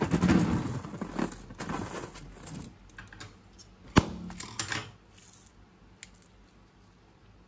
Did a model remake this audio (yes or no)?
no